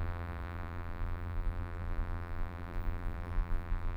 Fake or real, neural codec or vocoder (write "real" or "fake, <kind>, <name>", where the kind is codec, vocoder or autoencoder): fake, vocoder, BigVGAN v2